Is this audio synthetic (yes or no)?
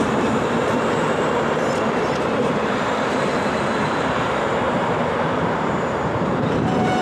yes